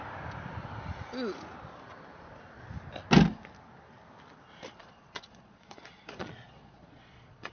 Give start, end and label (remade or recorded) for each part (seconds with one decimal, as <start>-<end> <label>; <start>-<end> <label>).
0.0-4.8 recorded; 4.8-7.5 remade